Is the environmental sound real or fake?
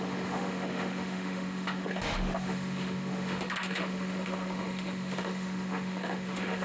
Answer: fake